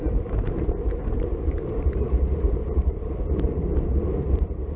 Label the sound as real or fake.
fake